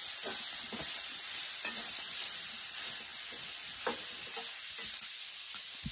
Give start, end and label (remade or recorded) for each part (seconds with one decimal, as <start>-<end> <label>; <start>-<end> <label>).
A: 0.0-0.6 recorded; 0.6-3.1 remade; 3.1-5.9 recorded